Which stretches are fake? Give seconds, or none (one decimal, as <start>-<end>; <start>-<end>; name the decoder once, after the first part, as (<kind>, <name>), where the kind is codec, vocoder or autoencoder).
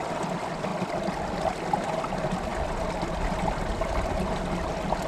none